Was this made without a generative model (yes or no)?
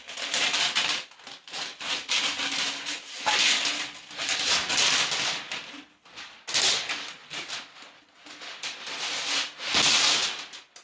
yes